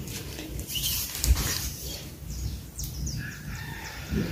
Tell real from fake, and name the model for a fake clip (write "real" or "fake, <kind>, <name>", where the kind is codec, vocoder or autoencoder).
fake, vocoder, BigVGAN v2